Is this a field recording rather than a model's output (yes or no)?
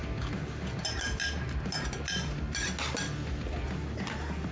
yes